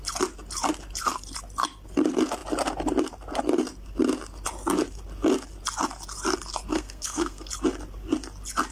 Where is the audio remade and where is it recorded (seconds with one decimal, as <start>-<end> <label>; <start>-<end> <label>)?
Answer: 0.0-6.7 recorded; 6.7-7.5 remade; 7.5-8.7 recorded